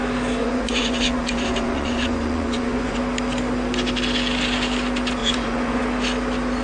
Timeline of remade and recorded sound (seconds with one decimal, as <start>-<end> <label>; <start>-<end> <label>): 0.0-0.4 recorded; 0.4-3.0 remade; 3.0-5.2 recorded; 5.2-5.8 remade; 5.8-6.6 recorded